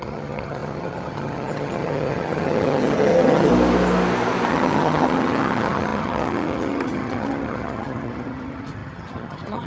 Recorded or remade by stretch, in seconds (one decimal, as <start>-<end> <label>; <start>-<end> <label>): 0.0-3.5 remade; 3.5-4.5 recorded; 4.5-9.7 remade

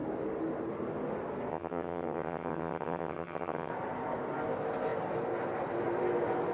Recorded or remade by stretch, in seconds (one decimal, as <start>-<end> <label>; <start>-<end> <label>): 0.0-1.5 recorded; 1.5-3.7 remade; 3.7-6.5 recorded

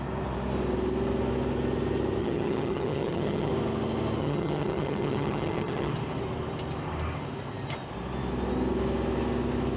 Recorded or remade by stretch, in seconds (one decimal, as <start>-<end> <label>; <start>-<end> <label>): 0.0-2.2 recorded; 2.2-3.5 remade; 3.5-4.2 recorded; 4.2-5.9 remade; 5.9-9.8 recorded

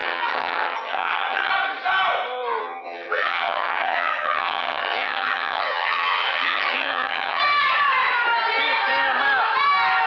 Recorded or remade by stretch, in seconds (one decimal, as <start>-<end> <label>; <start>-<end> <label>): 0.0-1.5 remade; 1.5-2.6 recorded; 2.6-7.4 remade; 7.4-10.1 recorded

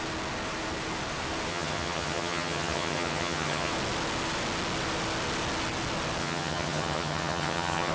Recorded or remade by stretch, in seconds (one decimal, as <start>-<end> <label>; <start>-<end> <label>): 0.0-1.5 recorded; 1.5-3.7 remade; 3.7-6.2 recorded; 6.2-7.9 remade

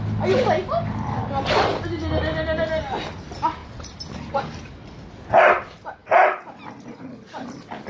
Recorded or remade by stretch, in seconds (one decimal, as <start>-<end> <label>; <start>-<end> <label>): 0.0-7.9 recorded

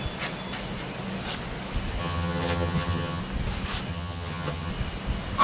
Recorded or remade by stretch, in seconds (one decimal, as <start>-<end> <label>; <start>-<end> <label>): 0.0-2.0 recorded; 2.0-3.2 remade; 3.2-3.9 recorded; 3.9-4.7 remade; 4.7-5.4 recorded